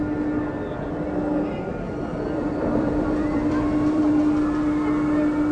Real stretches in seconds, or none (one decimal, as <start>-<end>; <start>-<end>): 0.0-2.1; 4.0-5.5